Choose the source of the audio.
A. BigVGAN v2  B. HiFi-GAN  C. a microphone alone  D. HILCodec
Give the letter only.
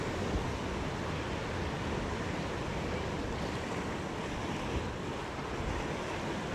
C